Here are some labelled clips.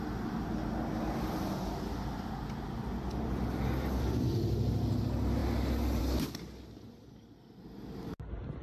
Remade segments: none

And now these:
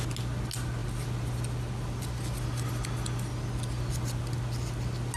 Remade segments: none